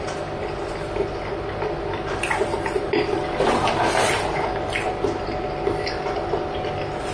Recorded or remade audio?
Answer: recorded